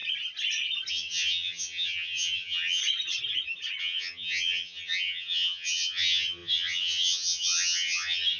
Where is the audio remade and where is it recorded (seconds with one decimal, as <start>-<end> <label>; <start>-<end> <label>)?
0.0-0.9 recorded; 0.9-2.8 remade; 2.8-3.8 recorded; 3.8-8.4 remade